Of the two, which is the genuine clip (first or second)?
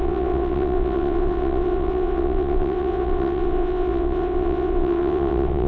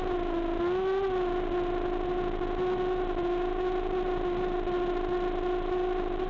second